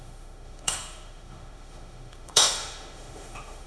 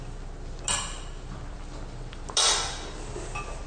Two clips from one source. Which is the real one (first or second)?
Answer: second